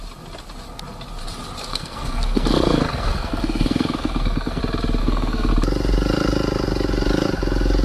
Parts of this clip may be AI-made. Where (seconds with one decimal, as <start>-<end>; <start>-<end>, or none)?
1.7-4.6; 5.0-5.5